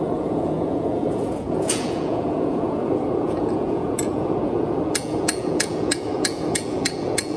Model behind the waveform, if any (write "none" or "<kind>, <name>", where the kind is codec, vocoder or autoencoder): vocoder, Vocos